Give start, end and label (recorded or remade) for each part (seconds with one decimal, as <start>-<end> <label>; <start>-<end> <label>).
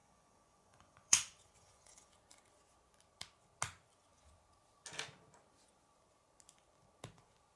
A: 0.0-2.1 remade; 2.1-7.6 recorded